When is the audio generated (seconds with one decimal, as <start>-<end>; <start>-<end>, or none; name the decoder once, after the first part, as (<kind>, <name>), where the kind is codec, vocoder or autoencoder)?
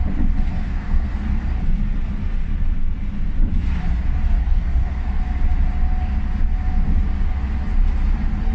0.5-1.4 (codec, SNAC); 4.4-5.2